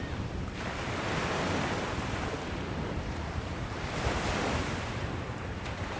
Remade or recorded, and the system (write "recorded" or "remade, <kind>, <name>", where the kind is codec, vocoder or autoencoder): remade, vocoder, BigVGAN v2